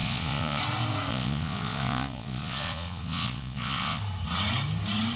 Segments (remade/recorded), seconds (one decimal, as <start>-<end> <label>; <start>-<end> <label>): 0.0-0.6 remade; 0.6-1.1 recorded; 1.1-4.0 remade; 4.0-5.2 recorded